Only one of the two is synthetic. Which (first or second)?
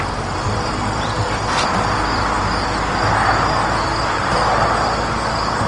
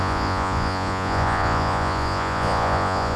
second